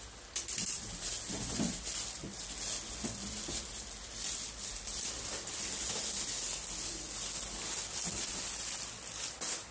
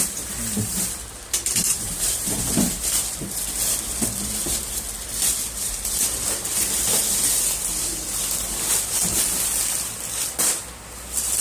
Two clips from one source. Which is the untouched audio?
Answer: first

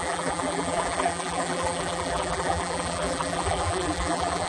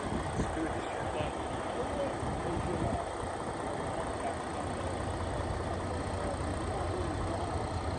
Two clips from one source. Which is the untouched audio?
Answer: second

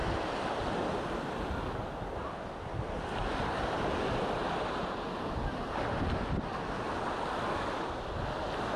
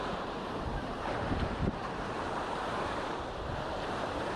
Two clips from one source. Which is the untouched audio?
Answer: first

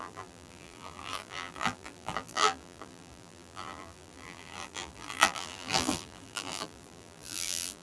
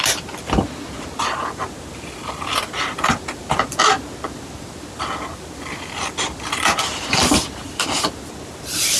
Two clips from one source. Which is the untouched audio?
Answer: second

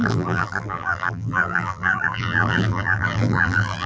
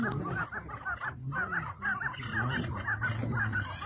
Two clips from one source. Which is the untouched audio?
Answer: second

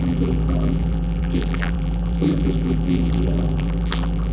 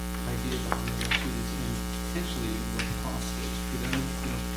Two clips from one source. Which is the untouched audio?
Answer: second